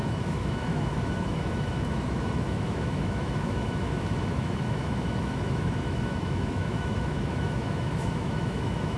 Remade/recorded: remade